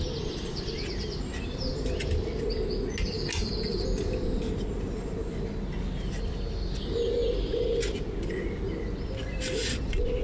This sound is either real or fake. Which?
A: real